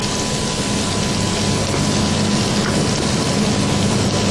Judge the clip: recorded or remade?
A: recorded